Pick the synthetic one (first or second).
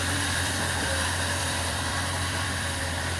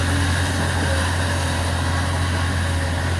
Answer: first